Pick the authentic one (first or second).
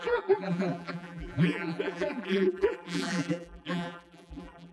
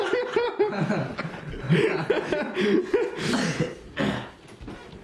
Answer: second